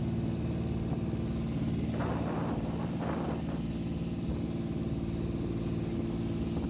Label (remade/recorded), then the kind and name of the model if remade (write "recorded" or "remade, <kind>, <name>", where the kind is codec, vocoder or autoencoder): recorded